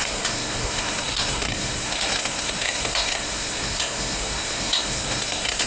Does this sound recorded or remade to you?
remade